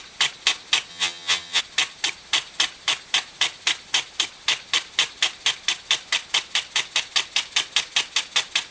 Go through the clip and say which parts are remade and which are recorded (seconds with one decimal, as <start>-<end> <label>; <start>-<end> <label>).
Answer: 0.0-0.9 recorded; 0.9-1.6 remade; 1.6-8.7 recorded